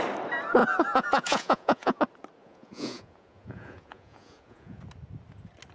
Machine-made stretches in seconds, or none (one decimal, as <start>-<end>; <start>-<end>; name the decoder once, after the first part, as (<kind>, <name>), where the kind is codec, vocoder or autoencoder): 0.6-2.0 (vocoder, Vocos); 2.4-4.8